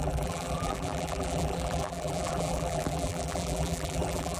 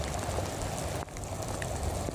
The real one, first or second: second